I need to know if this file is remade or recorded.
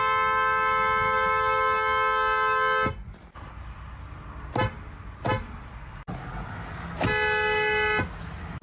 recorded